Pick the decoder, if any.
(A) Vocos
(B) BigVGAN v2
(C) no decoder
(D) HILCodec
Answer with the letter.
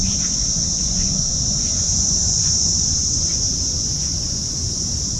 A